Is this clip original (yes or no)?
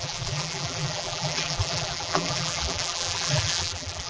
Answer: no